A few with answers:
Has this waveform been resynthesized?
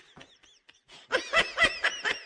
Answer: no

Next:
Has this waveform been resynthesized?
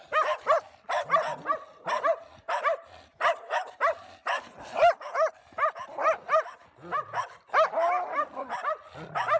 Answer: no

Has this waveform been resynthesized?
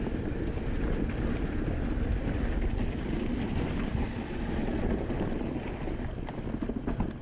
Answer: no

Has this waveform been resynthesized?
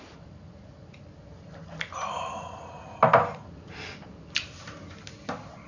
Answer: no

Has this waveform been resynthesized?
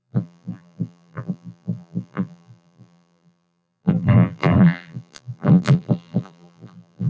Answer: yes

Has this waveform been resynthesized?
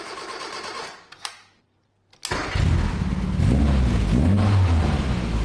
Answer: no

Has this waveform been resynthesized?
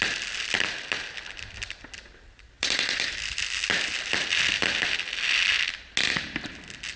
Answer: no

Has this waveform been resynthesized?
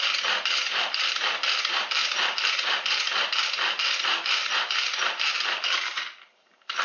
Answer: yes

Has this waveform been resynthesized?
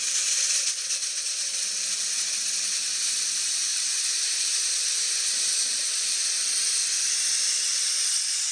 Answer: no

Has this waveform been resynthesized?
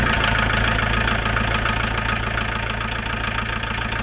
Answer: no